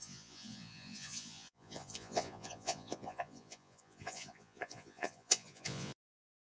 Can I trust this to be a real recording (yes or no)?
no